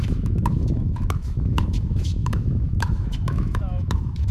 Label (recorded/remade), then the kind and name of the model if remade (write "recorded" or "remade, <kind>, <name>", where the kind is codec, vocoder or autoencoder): remade, autoencoder, DAC-VAE